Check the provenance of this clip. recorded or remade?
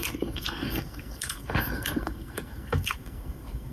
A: remade